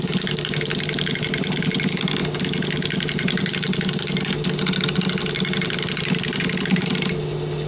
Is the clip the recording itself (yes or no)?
yes